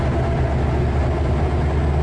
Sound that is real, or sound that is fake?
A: real